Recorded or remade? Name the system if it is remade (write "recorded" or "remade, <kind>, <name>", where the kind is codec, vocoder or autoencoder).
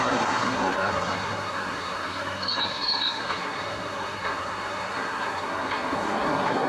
remade, codec, SNAC